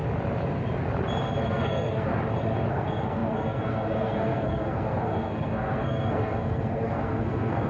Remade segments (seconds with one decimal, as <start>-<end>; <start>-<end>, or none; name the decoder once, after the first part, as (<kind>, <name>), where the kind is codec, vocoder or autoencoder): 1.4-2.1 (codec, SNAC); 2.7-7.7